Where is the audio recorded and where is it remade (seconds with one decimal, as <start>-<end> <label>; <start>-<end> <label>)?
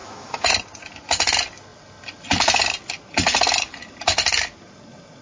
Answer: 0.0-0.5 remade; 0.5-5.2 recorded